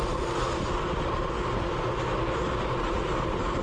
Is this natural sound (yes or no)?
yes